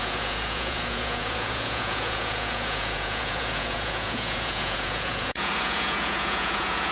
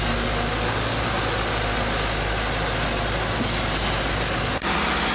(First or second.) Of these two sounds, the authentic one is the second